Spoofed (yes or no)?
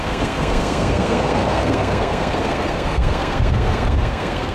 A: yes